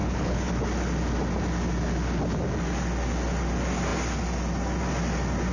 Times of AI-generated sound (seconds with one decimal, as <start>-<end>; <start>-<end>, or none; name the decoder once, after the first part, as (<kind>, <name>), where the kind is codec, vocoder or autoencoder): 0.0-0.5 (codec, HILCodec)